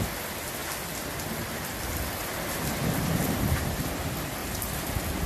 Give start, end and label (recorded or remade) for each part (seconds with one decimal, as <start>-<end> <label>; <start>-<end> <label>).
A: 0.0-5.3 remade